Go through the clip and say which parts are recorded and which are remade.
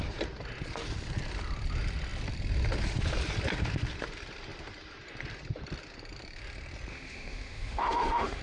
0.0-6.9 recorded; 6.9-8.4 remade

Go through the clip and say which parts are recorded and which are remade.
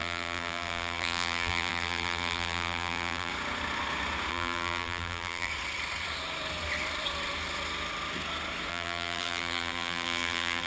0.0-3.3 remade; 3.3-4.3 recorded; 4.3-5.5 remade; 5.5-8.7 recorded; 8.7-10.7 remade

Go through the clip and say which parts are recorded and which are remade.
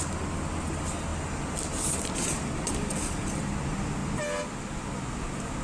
0.0-5.6 recorded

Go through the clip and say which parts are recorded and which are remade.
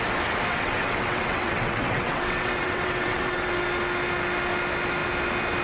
0.0-0.5 recorded; 0.5-3.5 remade; 3.5-5.6 recorded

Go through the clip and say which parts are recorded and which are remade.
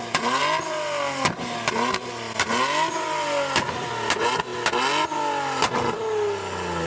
0.0-6.9 recorded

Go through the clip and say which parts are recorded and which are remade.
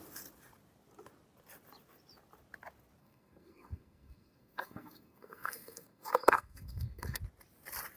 0.0-3.0 recorded; 3.0-7.2 remade; 7.2-8.0 recorded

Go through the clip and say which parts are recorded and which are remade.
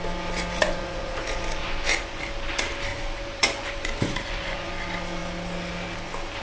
0.0-0.6 recorded; 0.6-1.1 remade; 1.1-1.6 recorded; 1.6-2.2 remade; 2.2-2.9 recorded; 2.9-4.7 remade; 4.7-6.4 recorded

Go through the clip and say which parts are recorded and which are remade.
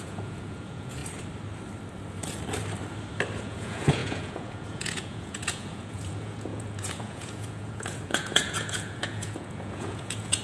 0.0-1.0 remade; 1.0-3.4 recorded; 3.4-10.4 remade